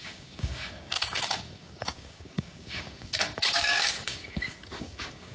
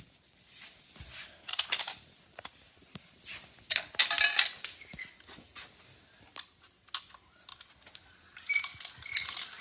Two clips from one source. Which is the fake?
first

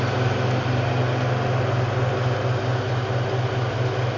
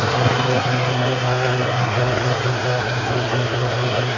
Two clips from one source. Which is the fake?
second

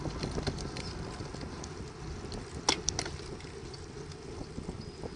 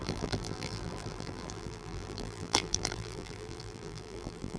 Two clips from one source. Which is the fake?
second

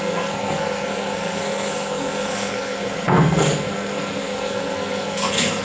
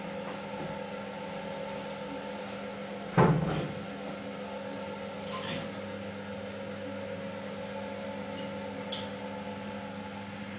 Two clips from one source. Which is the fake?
first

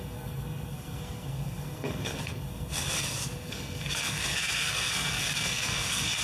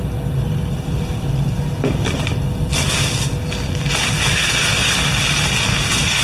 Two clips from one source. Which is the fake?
first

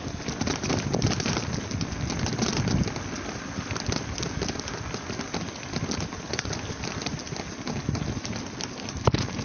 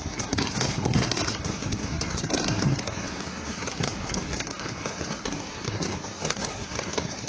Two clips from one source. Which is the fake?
second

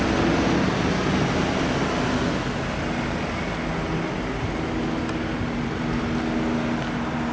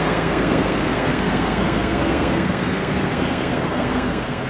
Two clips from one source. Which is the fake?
second